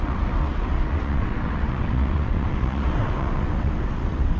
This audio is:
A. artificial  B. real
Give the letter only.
A